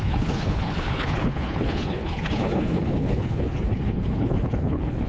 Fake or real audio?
fake